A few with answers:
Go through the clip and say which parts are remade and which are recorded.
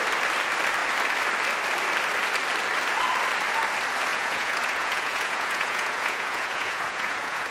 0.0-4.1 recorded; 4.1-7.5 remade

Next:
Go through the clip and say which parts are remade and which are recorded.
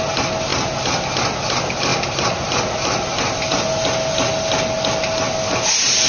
0.0-6.1 recorded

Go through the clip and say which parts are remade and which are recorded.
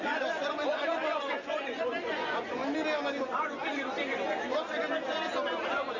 0.0-2.6 remade; 2.6-3.2 recorded; 3.2-3.6 remade; 3.6-6.0 recorded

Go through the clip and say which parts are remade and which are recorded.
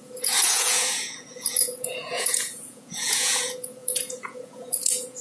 0.0-5.2 remade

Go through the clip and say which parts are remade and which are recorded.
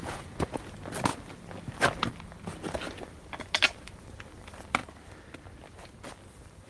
0.0-0.6 remade; 0.6-6.7 recorded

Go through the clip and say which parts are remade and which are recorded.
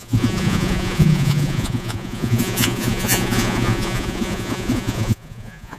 0.0-5.8 remade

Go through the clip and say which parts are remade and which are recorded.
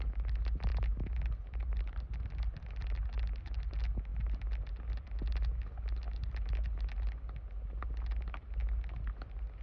0.0-9.6 recorded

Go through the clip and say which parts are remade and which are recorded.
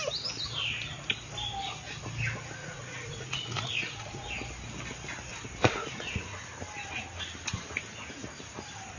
0.0-2.6 recorded; 2.6-4.3 remade; 4.3-5.3 recorded; 5.3-6.4 remade; 6.4-9.0 recorded